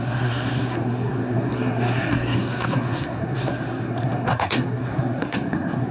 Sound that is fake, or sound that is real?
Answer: fake